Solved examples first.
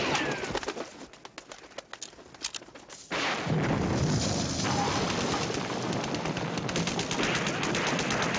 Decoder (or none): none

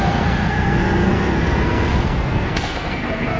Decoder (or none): codec, SNAC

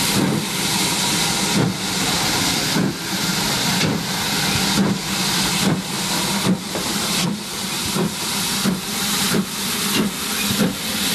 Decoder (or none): none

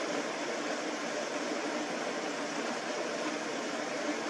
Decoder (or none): none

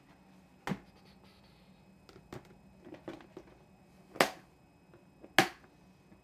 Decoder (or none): none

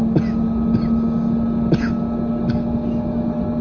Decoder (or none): none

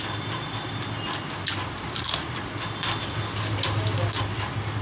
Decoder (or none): none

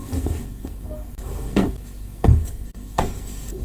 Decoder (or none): codec, SNAC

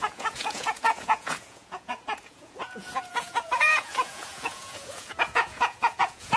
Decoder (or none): vocoder, Vocos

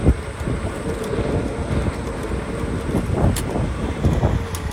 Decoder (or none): none